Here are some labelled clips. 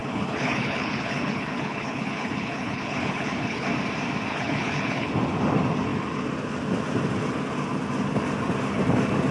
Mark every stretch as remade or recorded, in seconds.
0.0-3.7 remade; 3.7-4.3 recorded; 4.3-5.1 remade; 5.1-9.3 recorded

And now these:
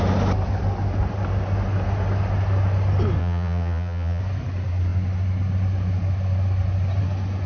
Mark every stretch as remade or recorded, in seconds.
0.0-3.2 recorded; 3.2-4.2 remade; 4.2-7.5 recorded

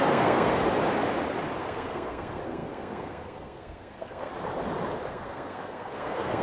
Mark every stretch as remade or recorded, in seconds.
0.0-0.6 remade; 0.6-1.6 recorded; 1.6-4.3 remade; 4.3-5.1 recorded; 5.1-6.4 remade

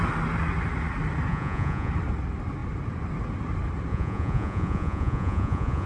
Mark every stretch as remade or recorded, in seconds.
0.0-1.3 recorded; 1.3-1.9 remade; 1.9-3.9 recorded; 3.9-5.9 remade